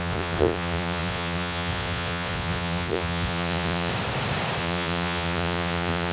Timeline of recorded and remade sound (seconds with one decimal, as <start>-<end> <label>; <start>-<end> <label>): 0.0-3.9 remade; 3.9-4.6 recorded; 4.6-6.1 remade